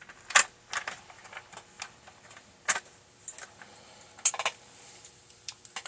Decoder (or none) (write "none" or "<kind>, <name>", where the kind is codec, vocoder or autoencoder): none